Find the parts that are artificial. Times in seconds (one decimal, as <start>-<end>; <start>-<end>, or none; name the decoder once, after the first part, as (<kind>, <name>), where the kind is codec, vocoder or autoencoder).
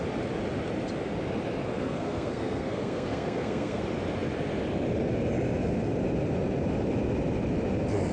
1.7-3.8 (codec, SNAC)